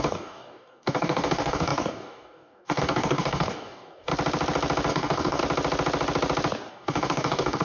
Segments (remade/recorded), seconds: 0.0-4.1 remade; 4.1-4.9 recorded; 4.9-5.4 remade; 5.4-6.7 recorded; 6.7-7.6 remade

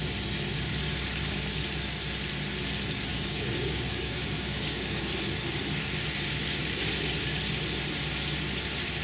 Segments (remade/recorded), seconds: 0.0-3.1 recorded; 3.1-5.0 remade; 5.0-9.0 recorded

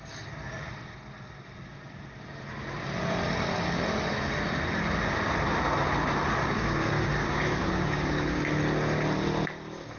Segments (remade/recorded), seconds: 0.0-6.4 recorded; 6.4-8.4 remade; 8.4-10.0 recorded

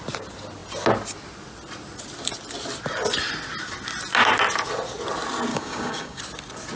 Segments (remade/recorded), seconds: 0.0-5.5 recorded; 5.5-6.2 remade; 6.2-6.8 recorded